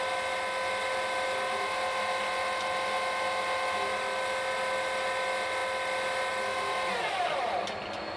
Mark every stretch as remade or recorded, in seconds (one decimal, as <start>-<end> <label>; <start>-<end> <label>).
0.0-8.2 recorded